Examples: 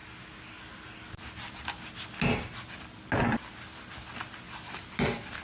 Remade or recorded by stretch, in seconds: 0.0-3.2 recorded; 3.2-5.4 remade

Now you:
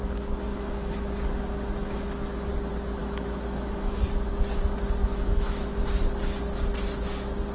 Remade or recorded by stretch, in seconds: 0.0-0.5 recorded; 0.5-1.1 remade; 1.1-1.8 recorded; 1.8-2.5 remade; 2.5-3.0 recorded; 3.0-4.0 remade; 4.0-5.1 recorded; 5.1-5.8 remade; 5.8-7.5 recorded

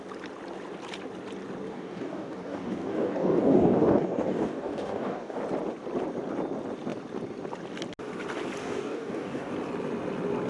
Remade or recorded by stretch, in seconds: 0.0-1.7 recorded; 1.7-5.4 remade; 5.4-8.6 recorded; 8.6-9.5 remade; 9.5-10.5 recorded